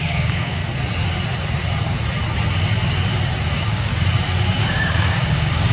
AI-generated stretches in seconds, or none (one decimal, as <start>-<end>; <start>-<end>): 0.0-0.6; 3.5-3.9; 4.6-5.7